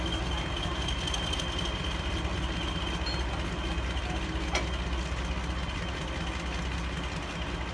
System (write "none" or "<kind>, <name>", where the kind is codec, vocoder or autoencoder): none